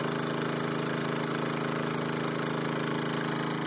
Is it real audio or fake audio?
real